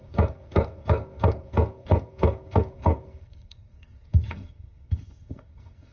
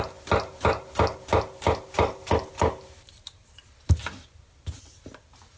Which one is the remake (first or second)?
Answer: first